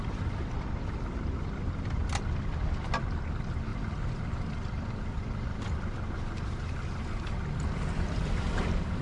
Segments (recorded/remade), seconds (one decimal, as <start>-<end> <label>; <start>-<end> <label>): 0.0-2.0 remade; 2.0-3.0 recorded; 3.0-9.0 remade